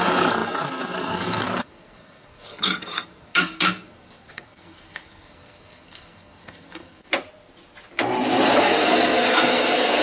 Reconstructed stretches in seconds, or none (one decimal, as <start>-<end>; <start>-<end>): 0.0-7.1; 8.6-10.0